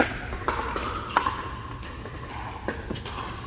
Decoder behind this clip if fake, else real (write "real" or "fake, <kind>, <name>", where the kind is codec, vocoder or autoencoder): real